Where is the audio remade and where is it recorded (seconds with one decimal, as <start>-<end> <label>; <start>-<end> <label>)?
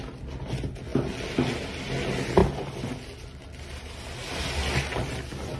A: 0.0-5.6 recorded